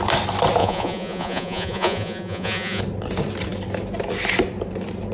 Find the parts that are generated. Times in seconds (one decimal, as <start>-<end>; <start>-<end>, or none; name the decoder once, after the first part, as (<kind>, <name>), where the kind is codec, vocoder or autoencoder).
0.6-2.8 (vocoder, Vocos)